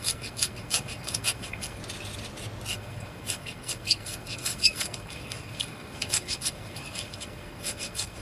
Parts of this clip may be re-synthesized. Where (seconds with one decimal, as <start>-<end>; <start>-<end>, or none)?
0.0-1.8; 2.7-8.2